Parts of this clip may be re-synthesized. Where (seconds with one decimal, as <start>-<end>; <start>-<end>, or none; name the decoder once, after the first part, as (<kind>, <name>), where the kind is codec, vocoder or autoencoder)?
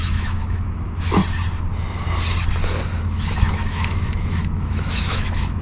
0.0-1.2 (autoencoder, DAC-VAE); 3.0-5.6